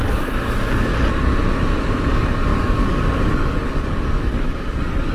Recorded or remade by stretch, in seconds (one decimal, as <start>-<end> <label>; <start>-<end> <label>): 0.0-0.9 remade; 0.9-2.1 recorded; 2.1-5.1 remade